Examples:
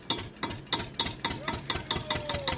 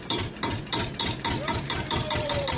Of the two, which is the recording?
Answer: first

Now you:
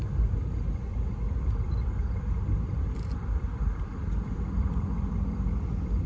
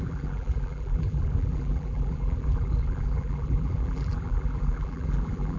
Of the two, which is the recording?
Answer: first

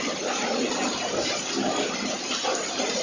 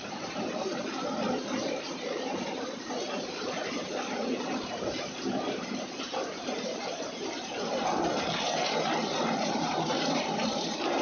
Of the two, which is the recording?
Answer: first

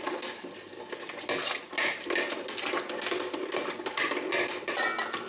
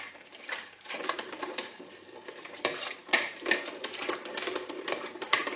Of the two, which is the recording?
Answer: first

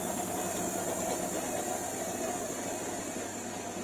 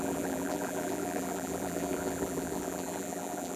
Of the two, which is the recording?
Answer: first